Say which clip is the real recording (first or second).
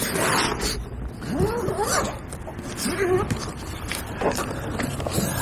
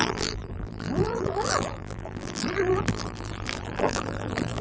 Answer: first